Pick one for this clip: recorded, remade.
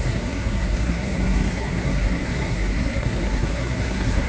remade